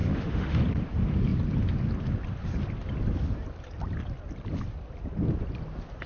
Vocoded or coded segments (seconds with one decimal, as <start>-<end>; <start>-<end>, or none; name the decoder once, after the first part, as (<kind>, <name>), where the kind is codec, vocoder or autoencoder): 0.0-0.6 (autoencoder, DAC-VAE)